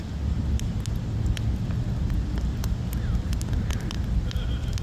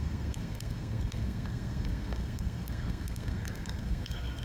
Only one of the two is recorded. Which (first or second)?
first